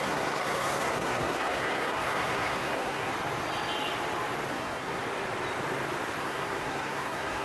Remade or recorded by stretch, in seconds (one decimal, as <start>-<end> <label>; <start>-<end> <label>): 0.0-3.1 remade; 3.1-4.5 recorded; 4.5-5.0 remade; 5.0-6.2 recorded; 6.2-7.4 remade